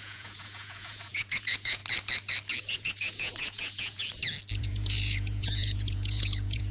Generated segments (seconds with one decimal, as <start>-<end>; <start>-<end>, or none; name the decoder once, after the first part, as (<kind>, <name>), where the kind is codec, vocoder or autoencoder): 0.0-1.8 (vocoder, Vocos); 2.6-4.0; 4.6-6.7